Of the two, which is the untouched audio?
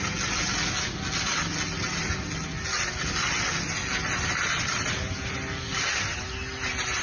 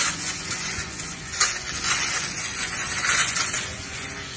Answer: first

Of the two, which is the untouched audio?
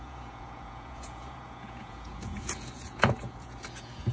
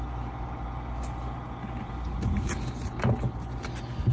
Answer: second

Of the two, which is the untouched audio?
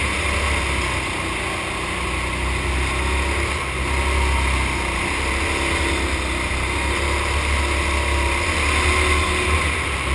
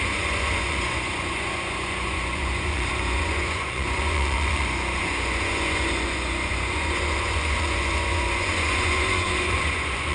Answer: first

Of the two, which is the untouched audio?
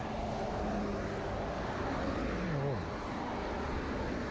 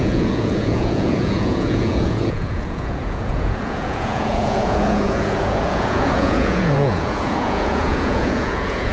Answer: first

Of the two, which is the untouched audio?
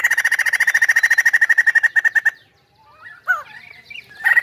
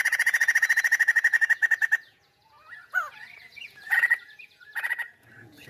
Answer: first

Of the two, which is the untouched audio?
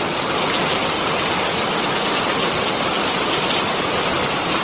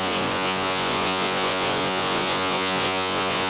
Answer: first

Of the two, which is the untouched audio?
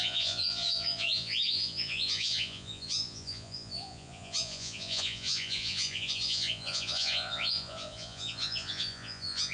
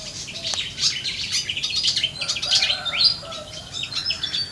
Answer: second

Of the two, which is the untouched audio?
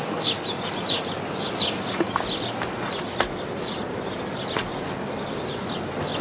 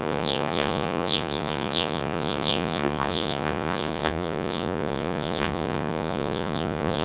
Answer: first